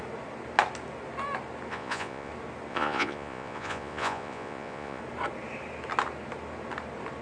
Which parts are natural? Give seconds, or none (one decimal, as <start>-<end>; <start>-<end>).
0.0-1.7; 2.3-2.7; 5.0-7.2